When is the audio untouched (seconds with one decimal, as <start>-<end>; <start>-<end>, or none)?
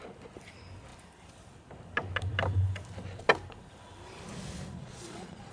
0.0-4.8